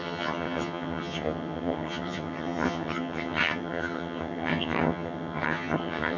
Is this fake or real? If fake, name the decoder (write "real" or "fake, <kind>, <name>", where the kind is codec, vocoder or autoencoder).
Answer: fake, vocoder, HiFi-GAN